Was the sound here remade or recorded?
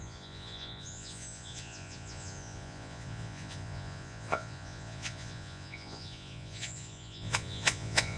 remade